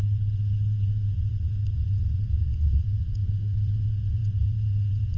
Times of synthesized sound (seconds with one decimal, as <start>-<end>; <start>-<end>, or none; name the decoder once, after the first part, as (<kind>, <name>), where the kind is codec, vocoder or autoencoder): 0.0-5.2 (vocoder, WaveNeXt)